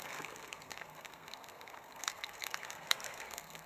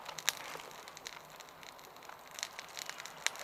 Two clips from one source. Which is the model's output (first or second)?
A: first